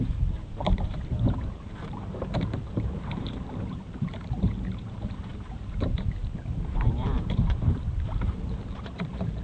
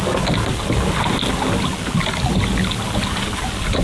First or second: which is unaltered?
second